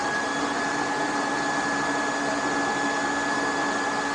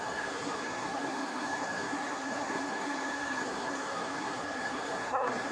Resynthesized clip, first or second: second